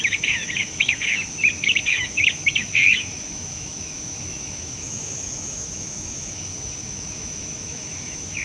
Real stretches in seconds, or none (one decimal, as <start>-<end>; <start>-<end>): none